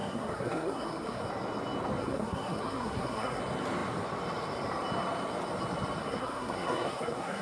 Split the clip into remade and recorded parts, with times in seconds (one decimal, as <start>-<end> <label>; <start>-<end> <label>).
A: 0.0-1.2 remade; 1.2-2.0 recorded; 2.0-3.4 remade; 3.4-6.0 recorded; 6.0-7.4 remade